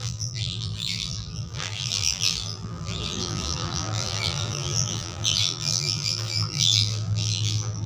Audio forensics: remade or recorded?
remade